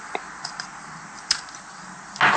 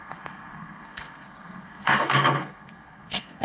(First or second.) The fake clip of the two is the second